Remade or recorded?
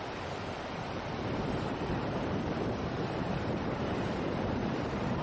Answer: remade